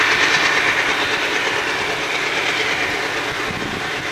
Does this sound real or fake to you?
real